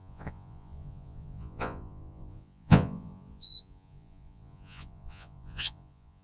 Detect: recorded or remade remade